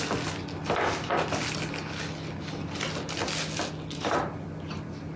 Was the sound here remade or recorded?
recorded